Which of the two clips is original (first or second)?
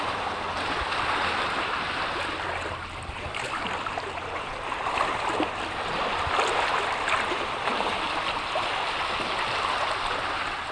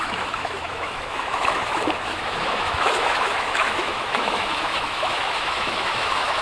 first